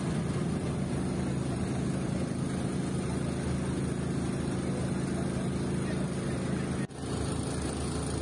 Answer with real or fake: real